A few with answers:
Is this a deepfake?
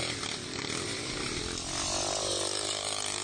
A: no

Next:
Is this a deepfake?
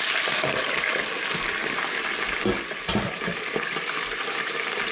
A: no